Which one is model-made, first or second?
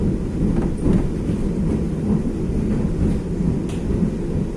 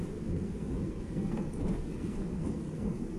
second